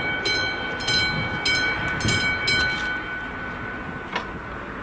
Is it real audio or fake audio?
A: real